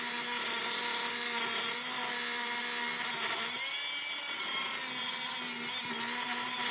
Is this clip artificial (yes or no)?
no